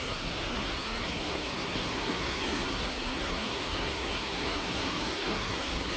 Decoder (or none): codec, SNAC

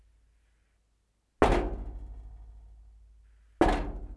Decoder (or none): none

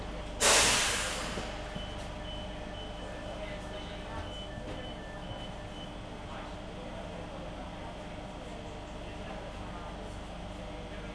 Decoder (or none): none